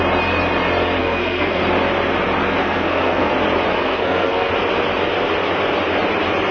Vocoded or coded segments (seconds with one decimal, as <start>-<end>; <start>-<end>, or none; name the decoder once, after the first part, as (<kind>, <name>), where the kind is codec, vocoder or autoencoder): 1.0-1.6 (codec, SNAC); 2.6-3.3; 3.7-4.5